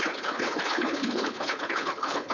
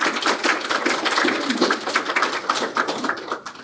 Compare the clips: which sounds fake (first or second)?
first